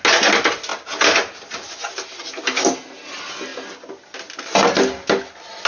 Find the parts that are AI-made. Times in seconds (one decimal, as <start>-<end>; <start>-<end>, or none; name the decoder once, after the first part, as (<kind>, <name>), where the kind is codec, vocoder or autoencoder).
none